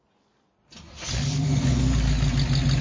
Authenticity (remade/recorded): recorded